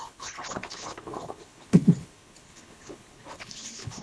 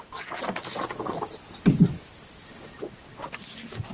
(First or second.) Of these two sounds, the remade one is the first